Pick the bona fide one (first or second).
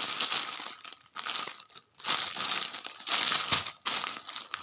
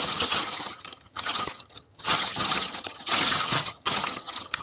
first